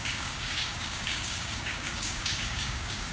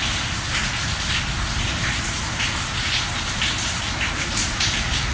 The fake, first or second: first